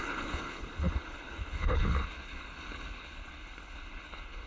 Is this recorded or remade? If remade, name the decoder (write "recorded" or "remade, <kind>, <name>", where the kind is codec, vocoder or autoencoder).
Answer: remade, codec, HILCodec